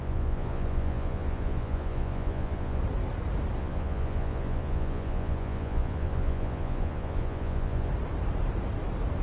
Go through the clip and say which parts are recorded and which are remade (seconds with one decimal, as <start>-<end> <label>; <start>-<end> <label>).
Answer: 0.0-2.8 remade; 2.8-3.6 recorded; 3.6-7.9 remade; 7.9-9.2 recorded